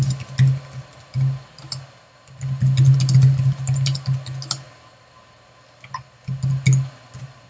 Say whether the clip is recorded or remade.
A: recorded